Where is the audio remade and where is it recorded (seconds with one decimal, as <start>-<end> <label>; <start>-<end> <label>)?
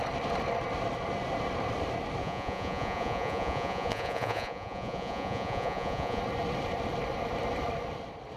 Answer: 0.0-2.2 recorded; 2.2-6.2 remade; 6.2-8.4 recorded